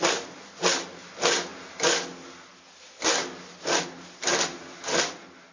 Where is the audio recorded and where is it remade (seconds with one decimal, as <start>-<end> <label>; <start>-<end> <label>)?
0.0-5.5 recorded